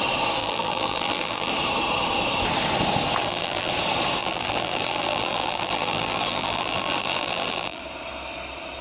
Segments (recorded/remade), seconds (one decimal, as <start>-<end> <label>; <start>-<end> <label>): 0.0-0.4 recorded; 0.4-1.5 remade; 1.5-3.2 recorded; 3.2-3.7 remade; 3.7-4.2 recorded; 4.2-7.8 remade; 7.8-8.8 recorded